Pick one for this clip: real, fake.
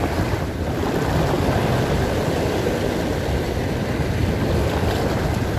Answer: real